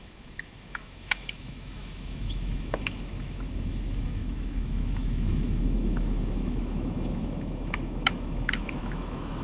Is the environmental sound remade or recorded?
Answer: remade